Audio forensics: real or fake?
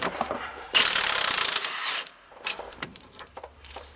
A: fake